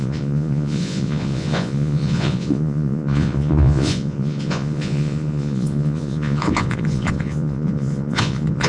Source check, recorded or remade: remade